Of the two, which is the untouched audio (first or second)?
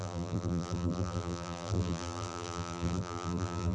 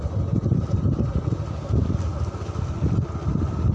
second